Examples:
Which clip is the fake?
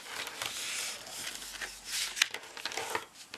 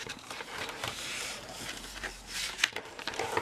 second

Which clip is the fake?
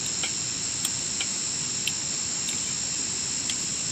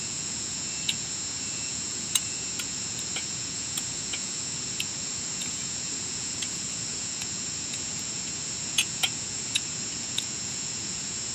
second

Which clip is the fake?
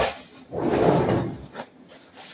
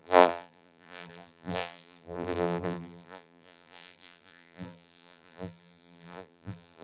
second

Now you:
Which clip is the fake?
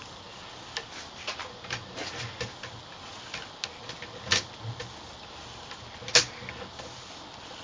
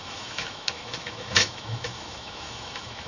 second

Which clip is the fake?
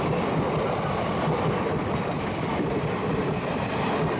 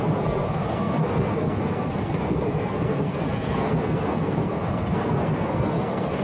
second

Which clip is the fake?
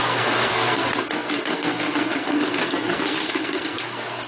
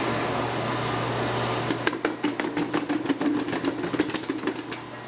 first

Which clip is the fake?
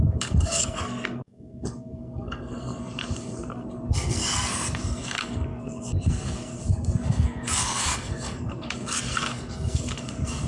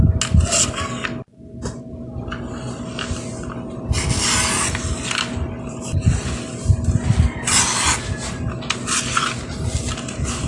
first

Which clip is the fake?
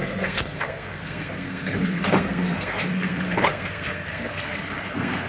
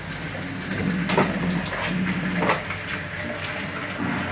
first